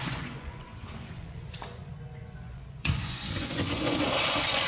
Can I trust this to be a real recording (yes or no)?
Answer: no